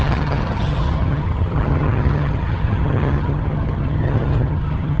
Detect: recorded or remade remade